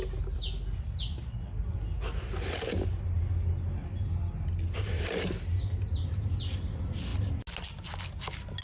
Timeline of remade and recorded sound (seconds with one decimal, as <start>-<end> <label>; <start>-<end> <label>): 0.0-8.6 recorded